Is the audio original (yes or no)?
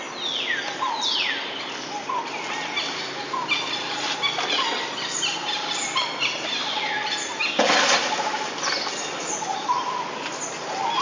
yes